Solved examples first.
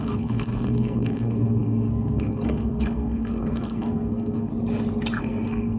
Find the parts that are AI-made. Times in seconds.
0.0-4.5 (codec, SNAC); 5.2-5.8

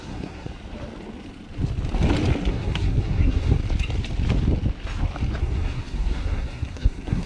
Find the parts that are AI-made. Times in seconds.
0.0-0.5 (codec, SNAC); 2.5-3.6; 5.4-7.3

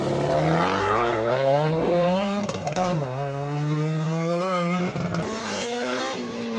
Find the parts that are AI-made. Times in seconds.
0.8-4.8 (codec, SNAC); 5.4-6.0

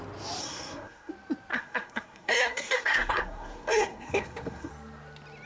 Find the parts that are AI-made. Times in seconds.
0.4-1.1 (codec, SNAC); 1.5-4.7

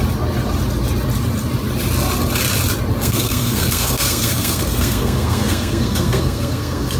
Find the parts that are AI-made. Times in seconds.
3.0-7.0 (codec, SNAC)

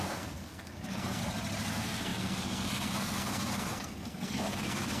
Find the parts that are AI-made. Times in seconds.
0.0-1.2 (codec, SNAC); 1.7-5.0